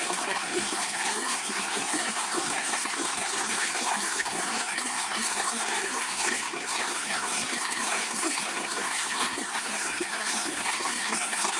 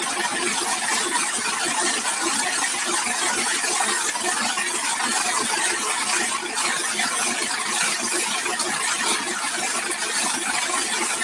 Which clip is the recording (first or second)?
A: second